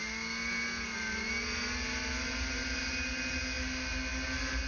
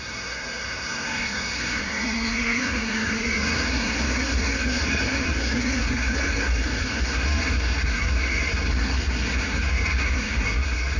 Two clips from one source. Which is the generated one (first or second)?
second